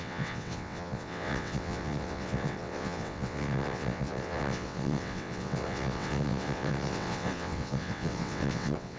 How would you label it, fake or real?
fake